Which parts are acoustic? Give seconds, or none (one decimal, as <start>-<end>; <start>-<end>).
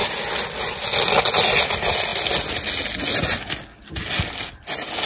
0.0-5.1